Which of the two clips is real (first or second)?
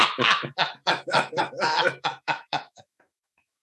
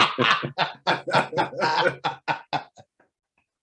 second